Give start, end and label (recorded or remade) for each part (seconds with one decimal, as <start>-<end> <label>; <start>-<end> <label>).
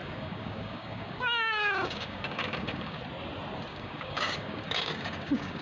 0.0-3.0 remade; 3.0-3.7 recorded; 3.7-5.6 remade